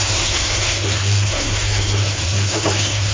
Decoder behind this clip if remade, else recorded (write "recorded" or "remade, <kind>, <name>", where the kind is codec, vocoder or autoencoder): remade, codec, SNAC